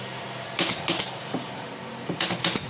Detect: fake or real real